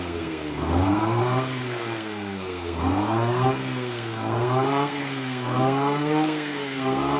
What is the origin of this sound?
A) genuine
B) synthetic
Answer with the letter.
B